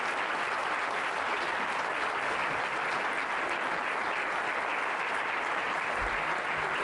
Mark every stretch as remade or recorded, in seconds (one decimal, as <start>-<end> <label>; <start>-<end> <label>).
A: 0.0-6.8 recorded

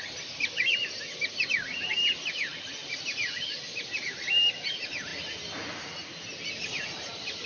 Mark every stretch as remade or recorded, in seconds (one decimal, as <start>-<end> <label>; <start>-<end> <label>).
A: 0.0-7.5 recorded

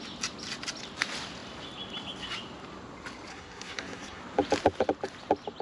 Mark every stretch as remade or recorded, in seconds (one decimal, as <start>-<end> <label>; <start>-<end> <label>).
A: 0.0-3.3 recorded; 3.3-4.2 remade; 4.2-5.6 recorded

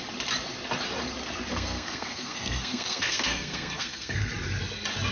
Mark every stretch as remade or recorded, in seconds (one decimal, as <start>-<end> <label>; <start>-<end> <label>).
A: 0.0-1.5 recorded; 1.5-4.3 remade; 4.3-5.1 recorded

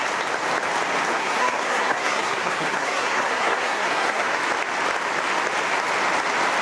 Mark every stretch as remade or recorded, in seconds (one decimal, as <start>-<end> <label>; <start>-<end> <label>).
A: 0.0-1.1 recorded; 1.1-4.4 remade; 4.4-6.6 recorded

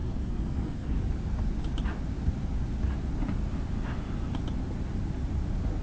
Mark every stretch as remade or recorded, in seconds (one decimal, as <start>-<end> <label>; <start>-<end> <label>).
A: 0.0-1.0 remade; 1.0-5.8 recorded